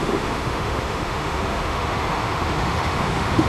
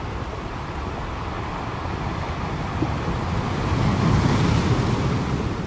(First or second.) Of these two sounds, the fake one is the first